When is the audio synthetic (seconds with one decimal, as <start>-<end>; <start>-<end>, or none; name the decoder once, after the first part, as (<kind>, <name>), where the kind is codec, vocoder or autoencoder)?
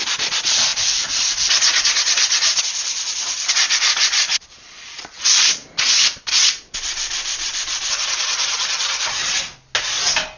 0.0-5.6 (vocoder, Vocos); 6.7-9.5